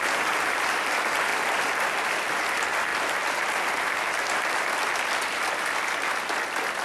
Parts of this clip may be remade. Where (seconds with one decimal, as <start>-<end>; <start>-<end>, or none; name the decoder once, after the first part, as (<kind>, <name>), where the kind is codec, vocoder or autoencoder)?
1.3-2.4 (vocoder, BigVGAN v2)